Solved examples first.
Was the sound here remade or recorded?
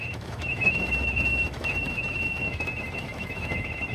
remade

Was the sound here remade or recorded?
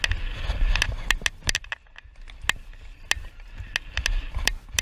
recorded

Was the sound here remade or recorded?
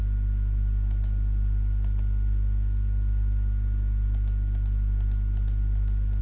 recorded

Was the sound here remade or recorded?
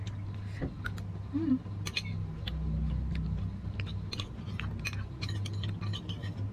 recorded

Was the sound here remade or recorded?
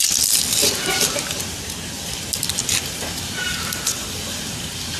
recorded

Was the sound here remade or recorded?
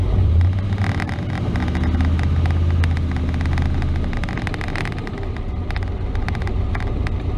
recorded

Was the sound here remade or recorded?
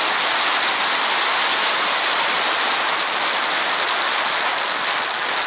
recorded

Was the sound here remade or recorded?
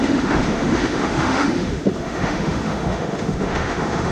remade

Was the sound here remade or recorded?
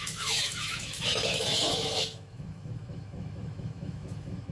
remade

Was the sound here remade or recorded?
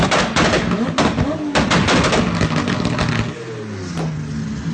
recorded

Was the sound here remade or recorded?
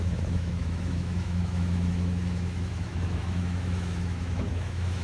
remade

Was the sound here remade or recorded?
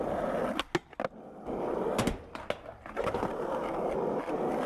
recorded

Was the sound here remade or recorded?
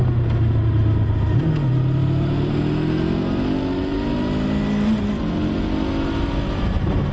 recorded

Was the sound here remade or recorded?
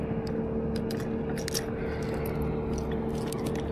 recorded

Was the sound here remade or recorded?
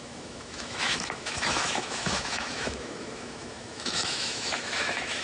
remade